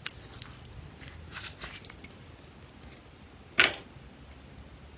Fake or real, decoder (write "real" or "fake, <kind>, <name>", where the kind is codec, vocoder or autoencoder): real